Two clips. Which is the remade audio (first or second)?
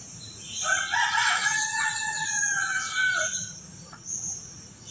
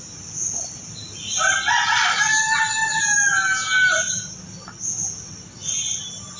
first